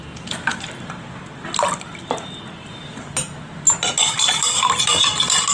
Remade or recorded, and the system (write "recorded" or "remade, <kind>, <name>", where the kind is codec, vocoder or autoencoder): recorded